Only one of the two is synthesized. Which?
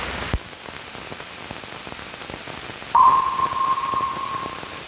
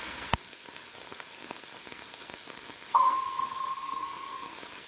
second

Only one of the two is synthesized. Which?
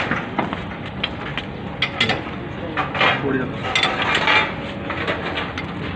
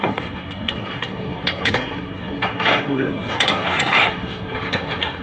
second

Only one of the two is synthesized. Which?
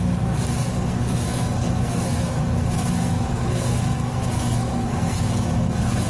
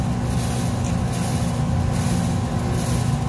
first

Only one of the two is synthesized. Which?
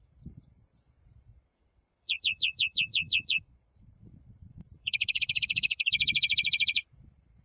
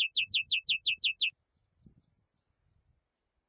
first